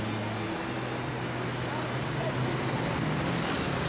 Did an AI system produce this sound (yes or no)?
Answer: no